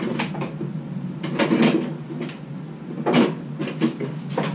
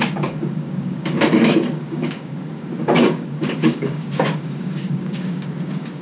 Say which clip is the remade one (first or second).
second